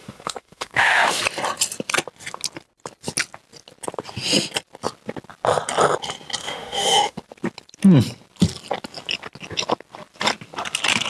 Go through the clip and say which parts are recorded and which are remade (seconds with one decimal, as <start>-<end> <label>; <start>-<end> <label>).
0.0-1.2 remade; 1.2-6.4 recorded; 6.4-7.2 remade; 7.2-11.1 recorded